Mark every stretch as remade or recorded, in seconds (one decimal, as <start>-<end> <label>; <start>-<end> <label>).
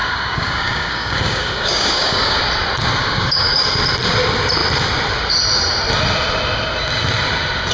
0.0-2.4 remade; 2.4-3.0 recorded; 3.0-3.5 remade; 3.5-7.7 recorded